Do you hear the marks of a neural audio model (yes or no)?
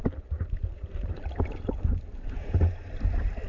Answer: yes